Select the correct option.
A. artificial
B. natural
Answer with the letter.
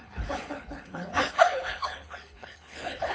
A